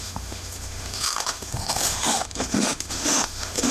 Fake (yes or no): yes